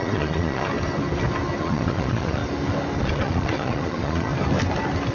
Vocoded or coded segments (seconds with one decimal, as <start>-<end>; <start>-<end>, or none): 0.0-0.7; 1.6-2.4; 3.0-4.3